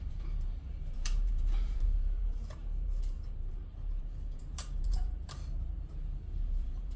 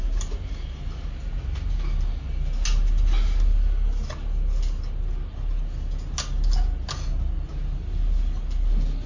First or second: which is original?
second